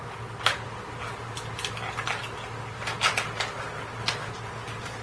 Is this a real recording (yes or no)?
yes